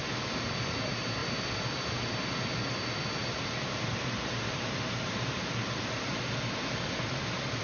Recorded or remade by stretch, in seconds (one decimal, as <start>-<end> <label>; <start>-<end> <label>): 0.0-3.2 recorded; 3.2-6.2 remade; 6.2-7.6 recorded